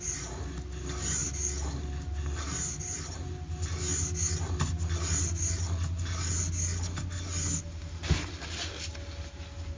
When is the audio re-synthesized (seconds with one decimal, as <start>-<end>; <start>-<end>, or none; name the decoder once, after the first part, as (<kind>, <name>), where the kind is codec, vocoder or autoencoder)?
none